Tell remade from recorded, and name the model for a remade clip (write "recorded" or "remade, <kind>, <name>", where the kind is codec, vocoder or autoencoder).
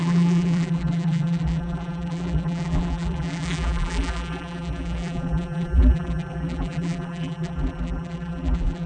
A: remade, vocoder, BigVGAN v2